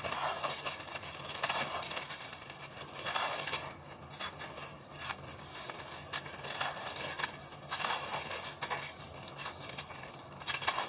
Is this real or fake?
real